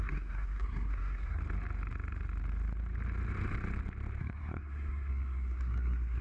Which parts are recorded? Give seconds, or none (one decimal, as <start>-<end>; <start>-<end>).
1.4-4.2